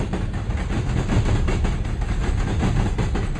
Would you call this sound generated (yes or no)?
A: no